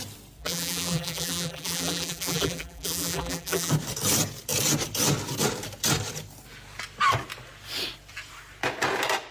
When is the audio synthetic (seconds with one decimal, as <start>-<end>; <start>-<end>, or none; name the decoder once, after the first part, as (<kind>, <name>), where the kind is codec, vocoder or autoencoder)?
0.4-3.7 (vocoder, BigVGAN v2)